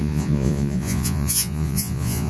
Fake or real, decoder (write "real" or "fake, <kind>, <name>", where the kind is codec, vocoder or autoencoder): fake, vocoder, Vocos